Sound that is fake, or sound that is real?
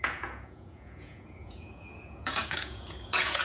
fake